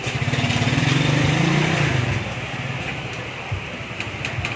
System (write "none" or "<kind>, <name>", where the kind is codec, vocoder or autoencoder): none